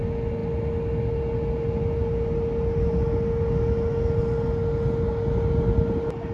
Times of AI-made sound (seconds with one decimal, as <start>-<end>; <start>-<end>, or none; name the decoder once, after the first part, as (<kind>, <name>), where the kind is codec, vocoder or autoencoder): none